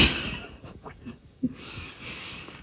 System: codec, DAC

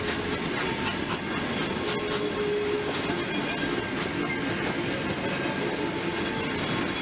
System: none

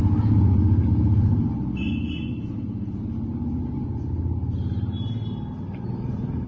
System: none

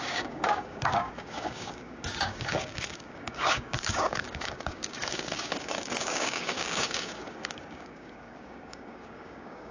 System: codec, DAC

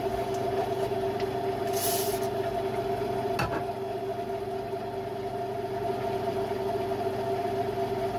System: none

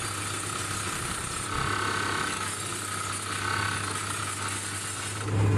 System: none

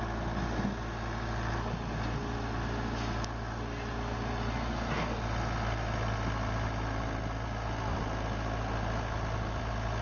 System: none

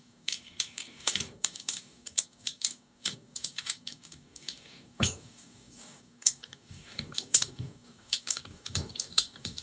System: codec, DAC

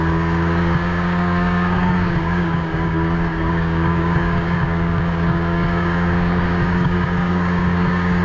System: codec, DAC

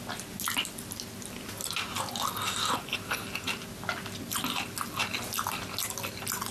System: none